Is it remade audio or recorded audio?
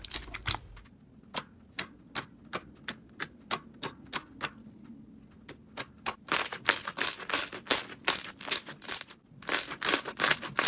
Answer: recorded